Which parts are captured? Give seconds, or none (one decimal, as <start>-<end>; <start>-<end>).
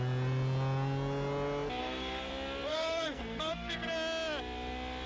0.0-1.8; 2.3-2.7; 3.9-5.1